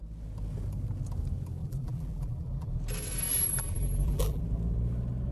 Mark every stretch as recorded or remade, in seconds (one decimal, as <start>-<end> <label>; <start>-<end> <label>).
0.0-1.6 recorded; 1.6-2.7 remade; 2.7-3.3 recorded; 3.3-4.4 remade; 4.4-5.3 recorded